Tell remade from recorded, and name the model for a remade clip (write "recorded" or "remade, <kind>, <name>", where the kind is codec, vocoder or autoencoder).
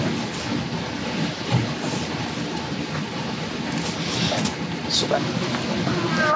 recorded